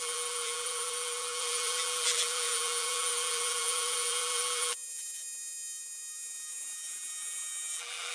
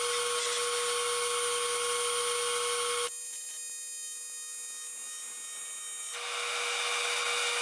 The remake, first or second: first